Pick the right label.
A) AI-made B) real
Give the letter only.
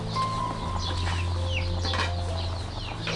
B